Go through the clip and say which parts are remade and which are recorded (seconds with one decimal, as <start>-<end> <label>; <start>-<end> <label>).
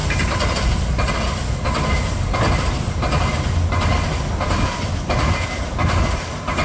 0.0-6.6 recorded